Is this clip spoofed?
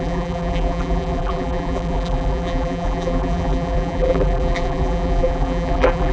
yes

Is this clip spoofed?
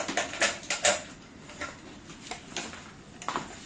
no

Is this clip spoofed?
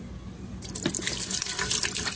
no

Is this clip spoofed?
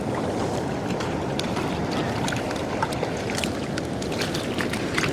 yes